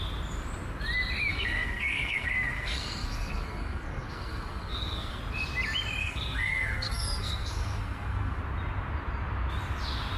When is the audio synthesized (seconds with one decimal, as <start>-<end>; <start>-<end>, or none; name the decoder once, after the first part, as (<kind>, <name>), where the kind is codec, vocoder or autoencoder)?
1.3-5.2 (codec, SNAC); 6.0-8.4